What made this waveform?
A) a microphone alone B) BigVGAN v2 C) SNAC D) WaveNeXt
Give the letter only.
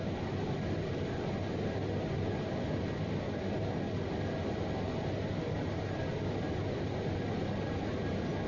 A